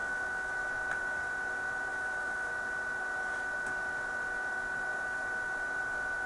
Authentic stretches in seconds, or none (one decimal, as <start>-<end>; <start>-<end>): 0.5-1.9; 2.5-6.3